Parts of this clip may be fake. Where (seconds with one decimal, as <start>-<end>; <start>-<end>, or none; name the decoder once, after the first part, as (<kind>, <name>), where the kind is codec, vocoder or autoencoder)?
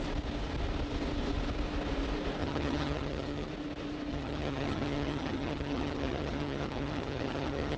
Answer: 2.4-3.5 (vocoder, HiFi-GAN); 4.1-7.8